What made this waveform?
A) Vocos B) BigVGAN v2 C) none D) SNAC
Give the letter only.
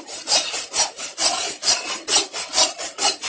B